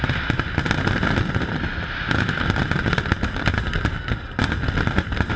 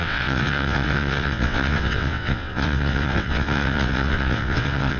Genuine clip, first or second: first